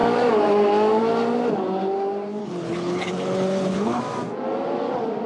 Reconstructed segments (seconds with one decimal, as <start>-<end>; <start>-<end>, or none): 2.4-4.0